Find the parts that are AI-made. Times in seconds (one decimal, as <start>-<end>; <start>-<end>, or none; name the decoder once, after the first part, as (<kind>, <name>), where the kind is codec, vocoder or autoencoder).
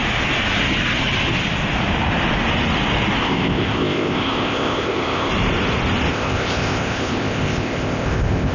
3.2-5.3 (codec, ZipCodec); 6.1-8.5